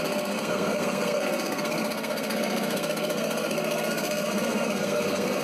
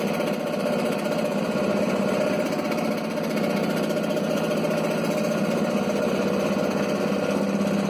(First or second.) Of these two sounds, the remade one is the first